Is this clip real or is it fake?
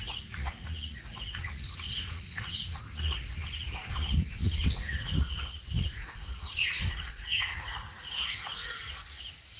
fake